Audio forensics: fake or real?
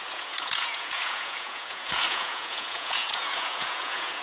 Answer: fake